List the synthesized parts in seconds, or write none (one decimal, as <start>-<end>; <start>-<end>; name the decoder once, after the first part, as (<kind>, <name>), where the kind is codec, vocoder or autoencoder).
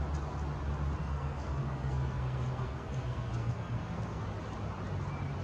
1.0-4.2 (codec, SNAC)